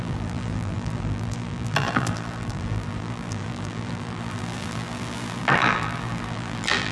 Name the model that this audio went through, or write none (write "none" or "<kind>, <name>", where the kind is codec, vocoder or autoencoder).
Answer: vocoder, BigVGAN v2